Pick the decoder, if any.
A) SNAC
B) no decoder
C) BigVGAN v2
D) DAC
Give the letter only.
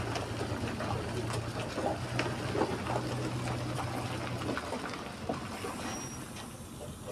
B